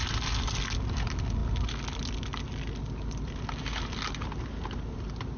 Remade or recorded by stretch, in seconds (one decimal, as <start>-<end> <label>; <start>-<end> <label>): 0.0-5.4 recorded

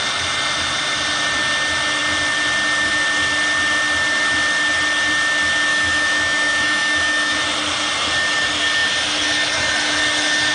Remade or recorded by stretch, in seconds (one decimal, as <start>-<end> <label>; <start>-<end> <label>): 0.0-5.7 recorded; 5.7-7.4 remade; 7.4-10.5 recorded

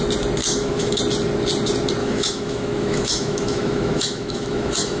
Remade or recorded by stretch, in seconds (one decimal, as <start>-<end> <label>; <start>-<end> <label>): 0.0-0.4 recorded; 0.4-1.0 remade; 1.0-2.0 recorded; 2.0-5.0 remade

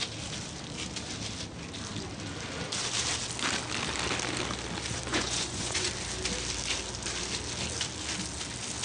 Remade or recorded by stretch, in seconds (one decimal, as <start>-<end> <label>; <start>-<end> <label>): 0.0-5.1 recorded; 5.1-5.9 remade; 5.9-8.8 recorded

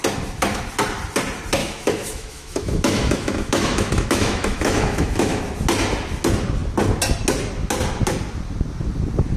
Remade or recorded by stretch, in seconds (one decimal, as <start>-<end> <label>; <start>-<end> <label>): 0.0-1.6 recorded; 1.6-5.4 remade; 5.4-9.4 recorded

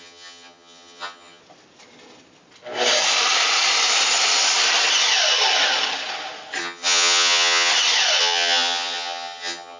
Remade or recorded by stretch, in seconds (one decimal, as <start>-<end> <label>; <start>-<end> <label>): 0.0-1.4 remade; 1.4-6.6 recorded; 6.6-7.7 remade; 7.7-8.2 recorded; 8.2-9.8 remade